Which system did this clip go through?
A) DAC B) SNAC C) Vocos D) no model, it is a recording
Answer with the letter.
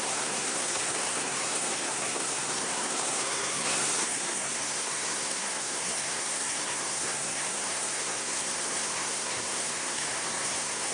B